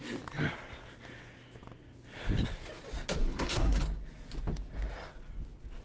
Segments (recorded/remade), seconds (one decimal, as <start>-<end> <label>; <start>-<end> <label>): 0.0-3.2 recorded; 3.2-3.8 remade; 3.8-5.8 recorded